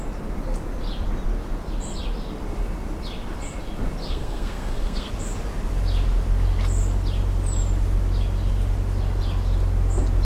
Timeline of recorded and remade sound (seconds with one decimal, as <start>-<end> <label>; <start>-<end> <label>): 0.0-4.0 recorded; 4.0-5.1 remade; 5.1-10.2 recorded